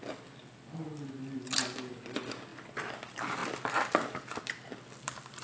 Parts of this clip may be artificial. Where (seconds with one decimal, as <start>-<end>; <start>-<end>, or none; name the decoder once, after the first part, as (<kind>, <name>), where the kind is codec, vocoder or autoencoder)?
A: none